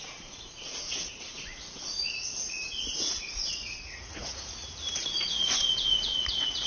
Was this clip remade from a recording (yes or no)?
yes